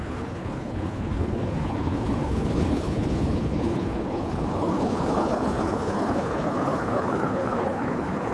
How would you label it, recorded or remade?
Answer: remade